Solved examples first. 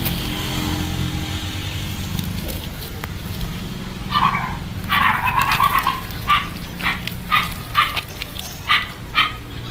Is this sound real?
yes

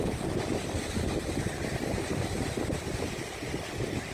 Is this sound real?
yes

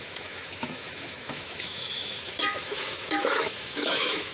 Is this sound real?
no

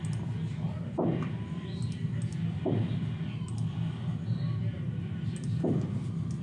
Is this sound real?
yes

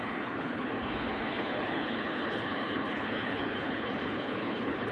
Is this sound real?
no